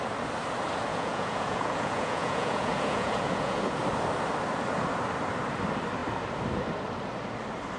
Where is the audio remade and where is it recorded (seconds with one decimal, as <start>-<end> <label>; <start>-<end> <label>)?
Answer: 0.0-0.9 recorded; 0.9-3.8 remade; 3.8-7.8 recorded